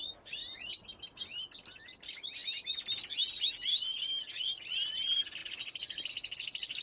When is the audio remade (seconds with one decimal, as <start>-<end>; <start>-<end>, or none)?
3.7-4.6